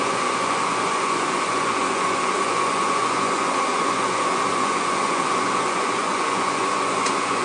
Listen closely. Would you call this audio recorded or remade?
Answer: remade